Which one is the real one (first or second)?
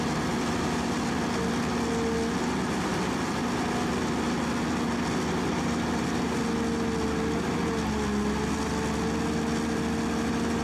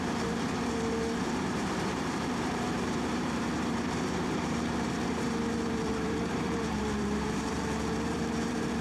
first